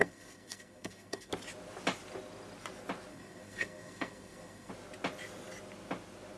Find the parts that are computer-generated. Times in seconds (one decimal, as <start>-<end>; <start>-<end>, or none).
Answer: 0.0-1.3; 3.1-4.7